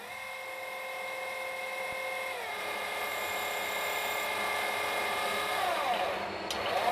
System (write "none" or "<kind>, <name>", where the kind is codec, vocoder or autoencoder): none